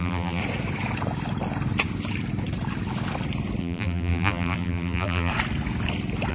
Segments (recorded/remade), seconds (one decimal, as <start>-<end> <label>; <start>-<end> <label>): 0.0-0.4 remade; 0.4-3.6 recorded; 3.6-5.3 remade; 5.3-6.3 recorded